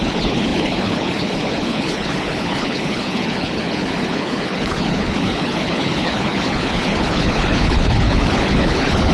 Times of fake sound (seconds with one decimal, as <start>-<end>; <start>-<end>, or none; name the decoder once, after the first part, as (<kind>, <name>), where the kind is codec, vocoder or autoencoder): 0.0-9.1 (codec, HILCodec)